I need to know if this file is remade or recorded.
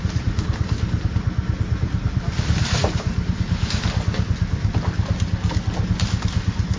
recorded